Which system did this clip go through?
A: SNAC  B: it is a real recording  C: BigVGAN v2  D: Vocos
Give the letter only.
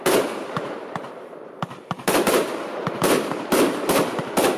C